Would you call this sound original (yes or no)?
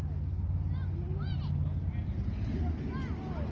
yes